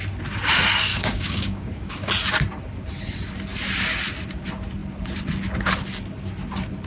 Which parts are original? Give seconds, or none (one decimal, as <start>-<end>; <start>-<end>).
0.0-0.9; 2.1-6.9